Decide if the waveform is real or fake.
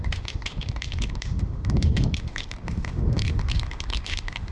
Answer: fake